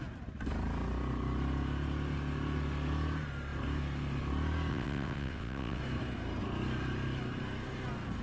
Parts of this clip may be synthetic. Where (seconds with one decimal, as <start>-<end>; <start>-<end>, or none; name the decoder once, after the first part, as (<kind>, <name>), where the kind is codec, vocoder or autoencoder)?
4.7-5.8 (vocoder, WaveNeXt)